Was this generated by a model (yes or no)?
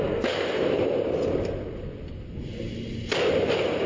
no